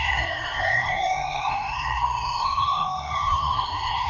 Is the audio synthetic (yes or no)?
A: yes